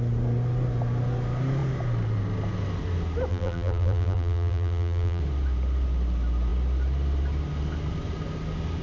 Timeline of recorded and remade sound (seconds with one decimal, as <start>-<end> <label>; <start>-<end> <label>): 0.0-3.3 recorded; 3.3-5.2 remade; 5.2-8.8 recorded